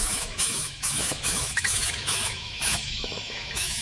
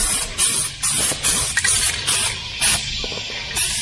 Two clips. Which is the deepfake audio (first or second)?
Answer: first